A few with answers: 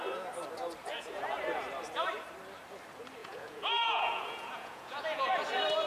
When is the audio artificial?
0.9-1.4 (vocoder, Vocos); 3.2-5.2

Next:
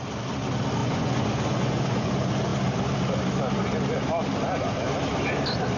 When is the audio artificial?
0.8-2.1 (vocoder, Vocos)

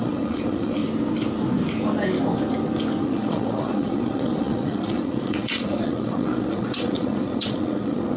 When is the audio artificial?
0.0-0.8 (vocoder, Vocos); 3.0-8.2

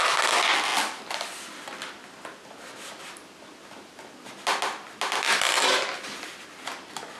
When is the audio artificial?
none

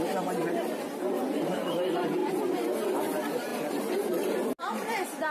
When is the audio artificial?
0.0-0.4 (vocoder, BigVGAN v2); 1.7-2.2; 3.0-5.3

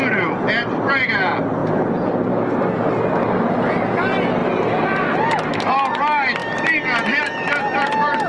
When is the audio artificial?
none

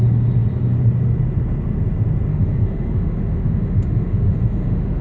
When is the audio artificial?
2.3-5.0 (autoencoder, DAC-VAE)